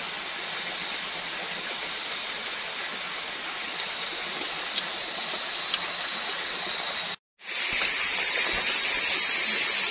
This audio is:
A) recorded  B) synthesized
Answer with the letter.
A